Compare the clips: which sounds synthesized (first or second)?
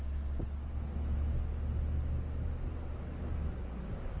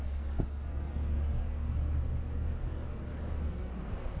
second